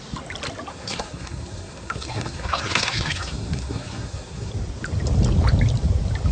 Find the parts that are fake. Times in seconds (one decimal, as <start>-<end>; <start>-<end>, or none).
0.7-4.5